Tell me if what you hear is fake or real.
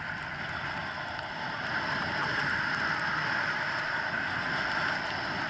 real